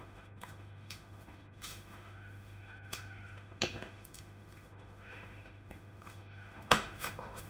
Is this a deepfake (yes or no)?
yes